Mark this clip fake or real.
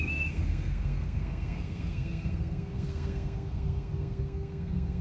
fake